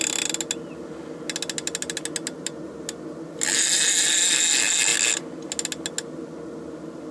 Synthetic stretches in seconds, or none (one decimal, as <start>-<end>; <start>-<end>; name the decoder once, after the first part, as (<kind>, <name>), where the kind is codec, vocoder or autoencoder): none